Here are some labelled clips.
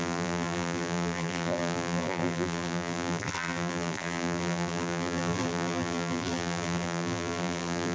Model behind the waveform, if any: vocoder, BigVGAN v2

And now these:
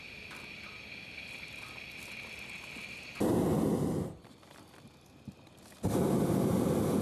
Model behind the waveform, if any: none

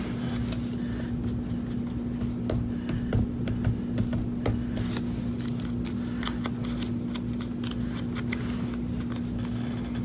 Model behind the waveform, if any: none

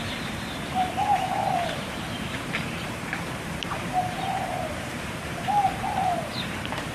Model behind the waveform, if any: vocoder, BigVGAN v2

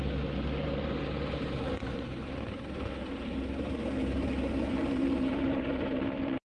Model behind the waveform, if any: vocoder, BigVGAN v2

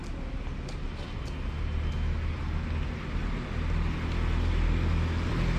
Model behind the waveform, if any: none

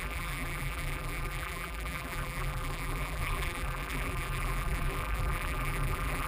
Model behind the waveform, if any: vocoder, BigVGAN v2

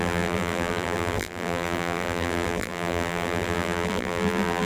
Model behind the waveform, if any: vocoder, BigVGAN v2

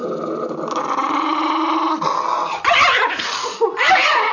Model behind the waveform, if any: none